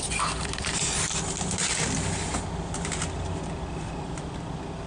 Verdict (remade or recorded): recorded